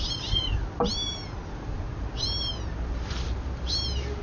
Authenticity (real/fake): real